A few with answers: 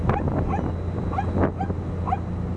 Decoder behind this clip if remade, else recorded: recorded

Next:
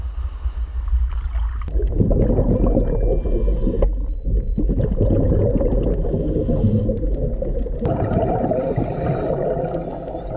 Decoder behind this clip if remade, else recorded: recorded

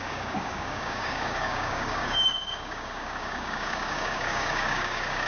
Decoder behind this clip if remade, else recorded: remade, codec, DAC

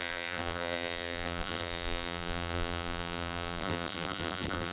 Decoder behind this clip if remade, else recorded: remade, vocoder, BigVGAN v2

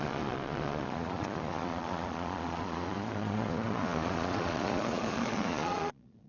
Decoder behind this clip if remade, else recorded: remade, vocoder, Vocos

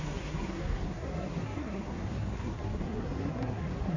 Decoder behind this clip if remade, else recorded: remade, codec, SNAC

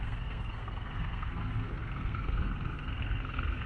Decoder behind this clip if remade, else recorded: remade, codec, SNAC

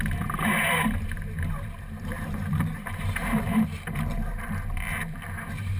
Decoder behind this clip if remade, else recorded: remade, vocoder, BigVGAN v2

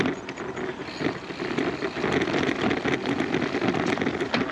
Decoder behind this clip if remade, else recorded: recorded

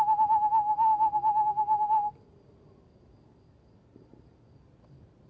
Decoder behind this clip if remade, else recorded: recorded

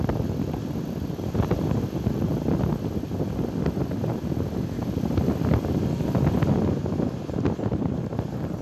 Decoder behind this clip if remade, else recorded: recorded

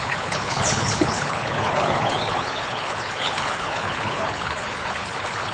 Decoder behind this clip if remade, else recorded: remade, codec, HILCodec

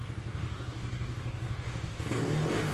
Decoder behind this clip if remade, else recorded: remade, codec, DAC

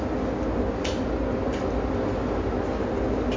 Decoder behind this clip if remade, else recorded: recorded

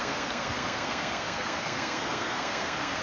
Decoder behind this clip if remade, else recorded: remade, codec, SNAC